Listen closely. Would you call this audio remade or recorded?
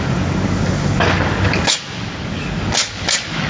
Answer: remade